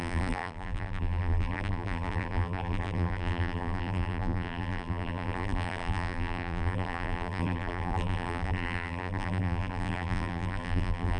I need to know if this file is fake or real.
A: fake